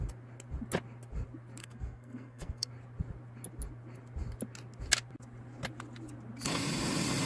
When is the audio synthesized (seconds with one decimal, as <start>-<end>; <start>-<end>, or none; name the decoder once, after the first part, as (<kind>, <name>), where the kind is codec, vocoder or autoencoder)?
1.6-2.7 (codec, SNAC)